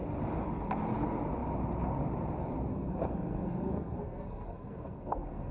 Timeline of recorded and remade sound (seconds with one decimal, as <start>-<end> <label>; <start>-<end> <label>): 0.0-2.7 recorded; 2.7-5.5 remade